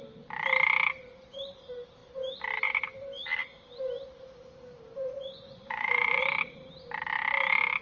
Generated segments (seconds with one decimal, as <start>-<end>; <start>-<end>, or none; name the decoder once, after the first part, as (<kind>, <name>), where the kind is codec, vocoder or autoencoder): 4.9-6.2 (vocoder, Vocos)